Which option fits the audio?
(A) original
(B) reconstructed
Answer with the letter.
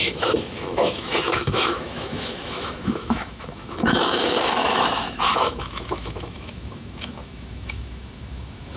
B